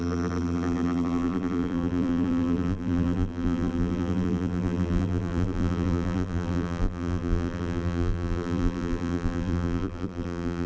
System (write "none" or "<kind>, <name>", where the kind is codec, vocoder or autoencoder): vocoder, BigVGAN v2